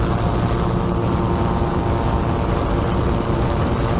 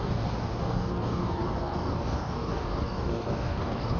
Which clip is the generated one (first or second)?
second